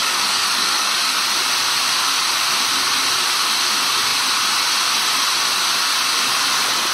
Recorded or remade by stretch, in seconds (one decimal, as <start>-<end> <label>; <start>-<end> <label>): 0.0-1.2 remade; 1.2-6.9 recorded